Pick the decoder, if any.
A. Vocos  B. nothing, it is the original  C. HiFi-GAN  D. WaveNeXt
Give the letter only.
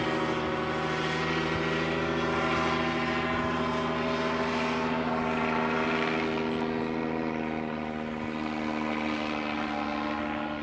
B